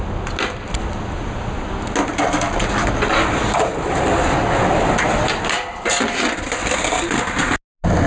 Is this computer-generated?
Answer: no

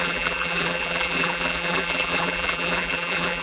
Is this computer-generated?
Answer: yes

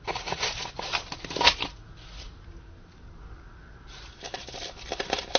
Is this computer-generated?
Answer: no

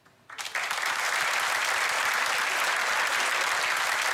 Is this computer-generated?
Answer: no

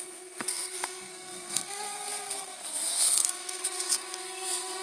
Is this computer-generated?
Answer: yes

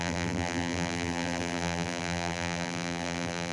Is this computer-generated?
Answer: yes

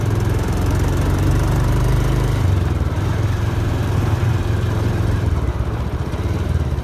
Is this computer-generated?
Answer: yes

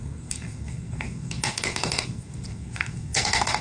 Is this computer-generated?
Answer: yes